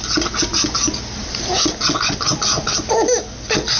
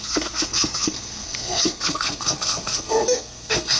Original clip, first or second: first